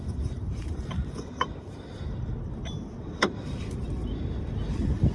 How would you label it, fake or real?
fake